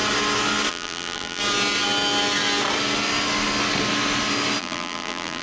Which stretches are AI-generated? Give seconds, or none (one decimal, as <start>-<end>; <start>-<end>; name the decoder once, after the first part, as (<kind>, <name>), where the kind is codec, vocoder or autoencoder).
0.7-1.4 (vocoder, BigVGAN v2); 4.6-5.4